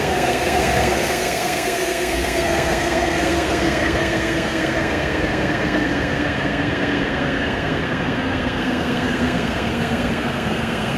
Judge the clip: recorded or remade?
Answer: remade